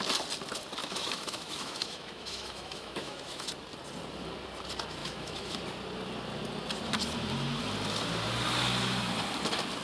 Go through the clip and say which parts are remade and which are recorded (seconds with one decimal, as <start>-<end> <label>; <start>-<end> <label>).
0.0-0.8 recorded; 0.8-3.5 remade; 3.5-5.0 recorded; 5.0-5.6 remade; 5.6-9.8 recorded